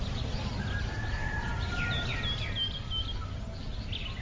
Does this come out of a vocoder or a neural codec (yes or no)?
no